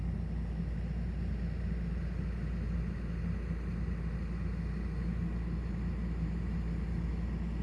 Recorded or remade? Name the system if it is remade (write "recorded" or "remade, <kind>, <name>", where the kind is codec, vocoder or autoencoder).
recorded